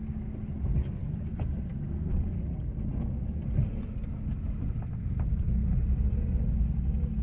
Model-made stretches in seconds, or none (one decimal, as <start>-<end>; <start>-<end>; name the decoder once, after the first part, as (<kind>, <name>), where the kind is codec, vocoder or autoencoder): none